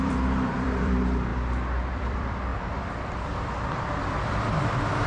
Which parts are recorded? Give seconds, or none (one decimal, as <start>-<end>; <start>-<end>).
1.3-1.9; 2.5-3.1

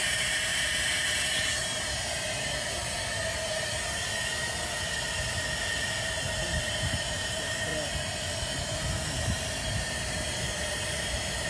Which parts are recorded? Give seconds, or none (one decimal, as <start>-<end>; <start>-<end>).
3.2-6.6; 7.7-9.1

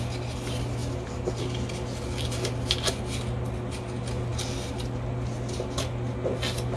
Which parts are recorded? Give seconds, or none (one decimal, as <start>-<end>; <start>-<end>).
0.0-6.8

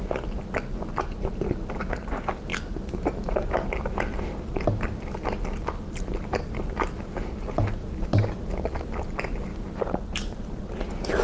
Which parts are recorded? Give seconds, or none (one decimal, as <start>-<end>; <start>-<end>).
0.0-9.5; 10.7-11.2

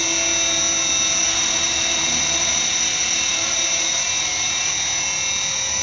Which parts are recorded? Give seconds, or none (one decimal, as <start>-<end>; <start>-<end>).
0.0-1.2; 4.7-5.8

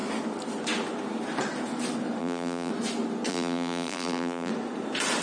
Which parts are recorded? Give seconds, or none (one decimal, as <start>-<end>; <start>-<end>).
0.0-2.2; 2.7-3.3; 4.5-5.2

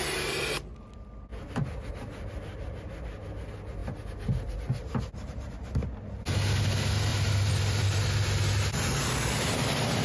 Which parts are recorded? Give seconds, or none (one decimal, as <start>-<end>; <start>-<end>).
0.0-7.1; 8.0-10.0

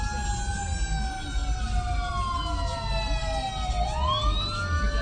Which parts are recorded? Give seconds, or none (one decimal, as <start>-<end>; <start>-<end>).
0.0-1.4; 2.1-3.2; 3.7-5.0